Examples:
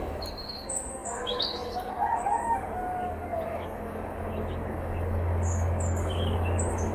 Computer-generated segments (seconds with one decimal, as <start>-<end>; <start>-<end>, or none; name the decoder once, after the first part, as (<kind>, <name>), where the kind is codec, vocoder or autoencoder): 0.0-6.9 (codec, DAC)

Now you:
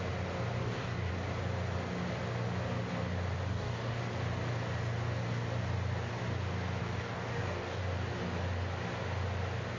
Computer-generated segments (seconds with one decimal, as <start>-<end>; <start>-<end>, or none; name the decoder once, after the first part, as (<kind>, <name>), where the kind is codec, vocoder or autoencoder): 0.6-1.1 (codec, DAC); 3.5-4.0; 6.8-7.8

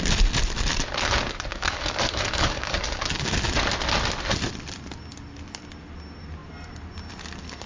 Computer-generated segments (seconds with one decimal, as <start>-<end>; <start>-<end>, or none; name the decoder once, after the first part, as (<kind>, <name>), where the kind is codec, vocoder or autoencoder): 1.5-3.3 (codec, DAC)

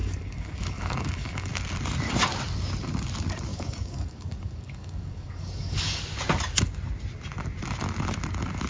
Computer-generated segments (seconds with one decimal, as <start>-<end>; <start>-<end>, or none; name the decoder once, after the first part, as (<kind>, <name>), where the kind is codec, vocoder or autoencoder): 0.0-1.5 (codec, DAC); 3.5-6.0

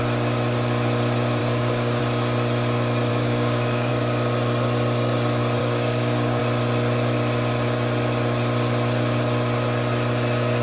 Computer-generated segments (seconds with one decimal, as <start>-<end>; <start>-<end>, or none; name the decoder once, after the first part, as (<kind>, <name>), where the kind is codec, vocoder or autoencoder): 1.4-2.0 (codec, DAC); 3.1-3.9; 5.6-6.4

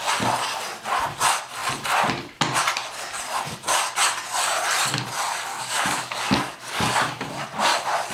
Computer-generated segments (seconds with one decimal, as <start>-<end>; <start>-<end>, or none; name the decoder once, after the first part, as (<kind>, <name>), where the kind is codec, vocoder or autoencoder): 5.5-7.4 (codec, DAC)